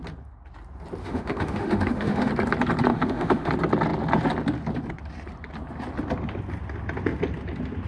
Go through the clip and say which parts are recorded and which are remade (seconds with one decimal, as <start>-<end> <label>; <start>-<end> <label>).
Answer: 0.0-1.0 recorded; 1.0-2.3 remade; 2.3-2.9 recorded; 2.9-3.5 remade; 3.5-7.9 recorded

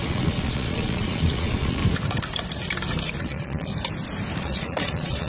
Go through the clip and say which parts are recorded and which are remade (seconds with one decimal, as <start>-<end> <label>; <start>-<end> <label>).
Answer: 0.0-1.8 remade; 1.8-3.2 recorded; 3.2-3.7 remade; 3.7-4.4 recorded; 4.4-5.3 remade

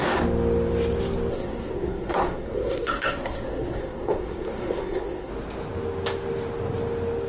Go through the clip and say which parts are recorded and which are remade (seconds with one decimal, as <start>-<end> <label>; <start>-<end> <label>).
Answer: 0.0-1.3 recorded; 1.3-5.3 remade; 5.3-7.3 recorded

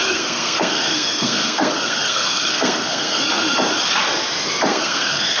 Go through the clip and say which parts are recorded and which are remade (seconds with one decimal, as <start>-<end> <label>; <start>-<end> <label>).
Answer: 0.0-3.2 remade; 3.2-4.7 recorded; 4.7-5.4 remade

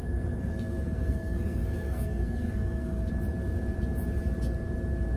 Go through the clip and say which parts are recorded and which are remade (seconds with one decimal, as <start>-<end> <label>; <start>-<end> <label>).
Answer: 0.0-3.1 remade; 3.1-5.2 recorded

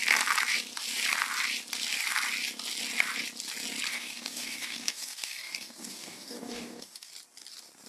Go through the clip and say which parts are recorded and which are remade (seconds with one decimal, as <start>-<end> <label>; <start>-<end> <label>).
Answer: 0.0-3.9 recorded; 3.9-7.1 remade; 7.1-7.9 recorded

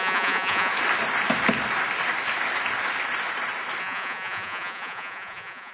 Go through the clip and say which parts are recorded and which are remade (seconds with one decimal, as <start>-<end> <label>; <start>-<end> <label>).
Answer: 0.0-0.7 remade; 0.7-3.8 recorded; 3.8-5.7 remade

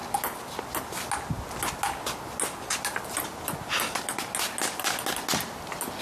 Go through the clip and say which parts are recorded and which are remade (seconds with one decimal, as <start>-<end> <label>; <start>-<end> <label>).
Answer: 0.0-6.0 recorded